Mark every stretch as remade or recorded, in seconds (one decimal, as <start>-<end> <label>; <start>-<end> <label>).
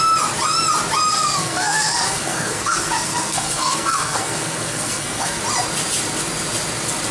0.0-1.1 recorded; 1.1-5.4 remade; 5.4-7.1 recorded